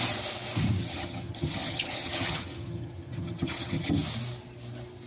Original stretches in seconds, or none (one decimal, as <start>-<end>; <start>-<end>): 0.0-0.8; 3.9-5.1